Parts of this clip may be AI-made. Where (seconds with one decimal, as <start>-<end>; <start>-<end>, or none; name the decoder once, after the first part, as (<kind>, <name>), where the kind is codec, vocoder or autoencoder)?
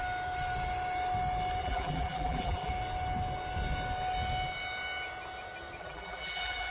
1.6-2.7 (vocoder, BigVGAN v2); 5.8-6.7